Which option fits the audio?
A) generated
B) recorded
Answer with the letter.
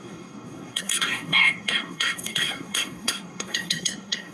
A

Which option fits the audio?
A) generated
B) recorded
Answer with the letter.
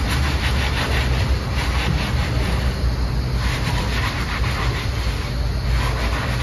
B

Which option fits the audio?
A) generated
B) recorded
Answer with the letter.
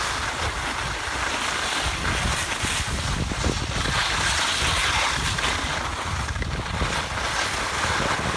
B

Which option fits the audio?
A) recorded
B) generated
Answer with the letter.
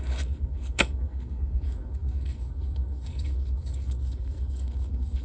B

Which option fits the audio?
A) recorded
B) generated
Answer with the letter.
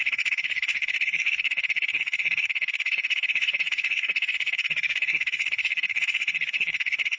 B